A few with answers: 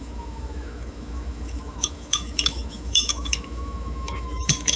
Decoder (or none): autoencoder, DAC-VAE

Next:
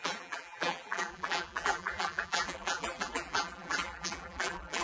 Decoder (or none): vocoder, BigVGAN v2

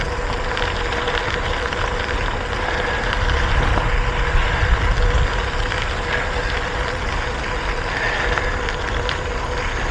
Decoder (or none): none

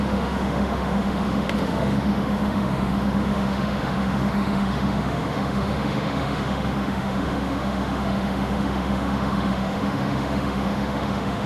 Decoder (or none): autoencoder, DAC-VAE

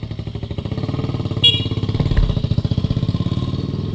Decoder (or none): none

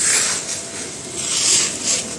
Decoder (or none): none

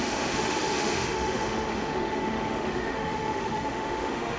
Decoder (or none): autoencoder, DAC-VAE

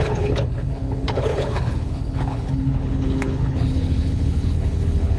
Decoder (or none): codec, HILCodec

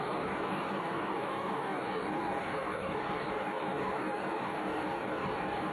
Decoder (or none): codec, DAC